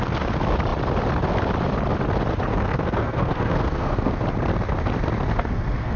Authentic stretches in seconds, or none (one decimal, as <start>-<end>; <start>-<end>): 0.0-2.5; 4.2-5.3